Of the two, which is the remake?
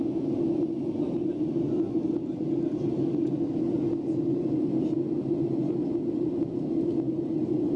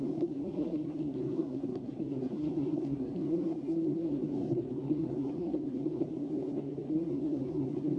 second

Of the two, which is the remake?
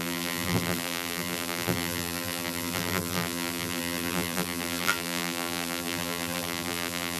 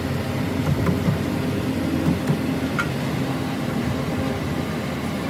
first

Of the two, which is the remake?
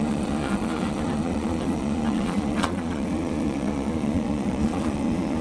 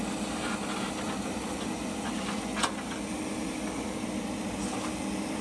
first